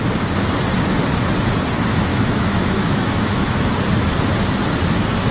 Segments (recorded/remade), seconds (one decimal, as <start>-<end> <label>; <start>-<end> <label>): 0.0-2.1 recorded; 2.1-3.7 remade; 3.7-5.3 recorded